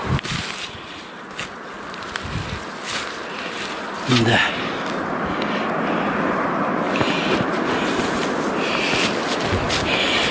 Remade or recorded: recorded